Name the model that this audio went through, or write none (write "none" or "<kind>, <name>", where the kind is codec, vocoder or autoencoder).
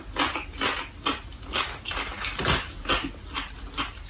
none